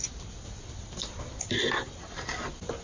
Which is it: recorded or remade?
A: recorded